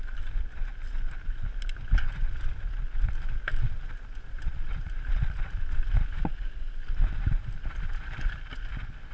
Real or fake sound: real